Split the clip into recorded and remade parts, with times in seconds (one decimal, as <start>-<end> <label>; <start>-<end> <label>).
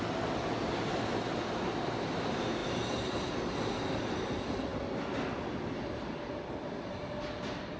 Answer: 0.0-7.8 recorded